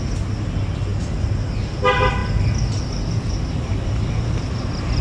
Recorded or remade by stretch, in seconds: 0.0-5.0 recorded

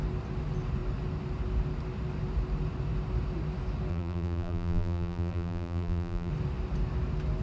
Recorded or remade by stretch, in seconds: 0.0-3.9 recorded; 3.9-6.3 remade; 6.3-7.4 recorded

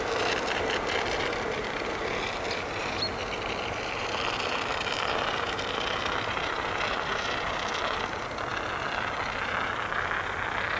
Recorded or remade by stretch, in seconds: 0.0-8.5 remade; 8.5-10.8 recorded

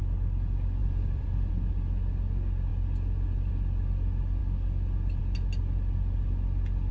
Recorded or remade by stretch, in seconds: 0.0-0.8 recorded; 0.8-1.5 remade; 1.5-6.9 recorded

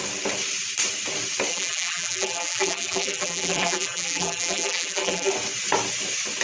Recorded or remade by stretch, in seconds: 0.0-1.5 recorded; 1.5-5.3 remade; 5.3-6.4 recorded

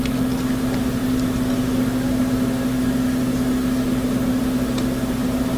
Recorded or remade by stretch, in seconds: 0.0-5.6 recorded